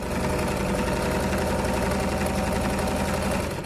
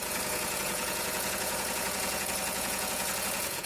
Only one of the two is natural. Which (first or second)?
first